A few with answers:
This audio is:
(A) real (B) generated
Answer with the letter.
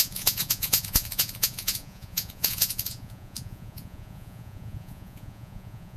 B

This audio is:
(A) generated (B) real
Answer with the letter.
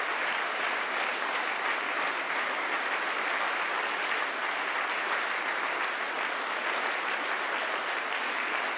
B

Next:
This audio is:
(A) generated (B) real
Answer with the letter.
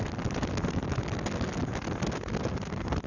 B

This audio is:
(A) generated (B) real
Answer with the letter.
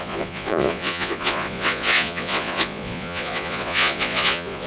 A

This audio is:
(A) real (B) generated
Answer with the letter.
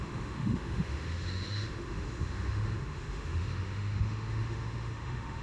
B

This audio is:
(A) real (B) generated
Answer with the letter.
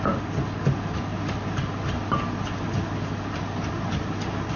A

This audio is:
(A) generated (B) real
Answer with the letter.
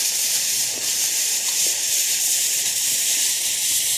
A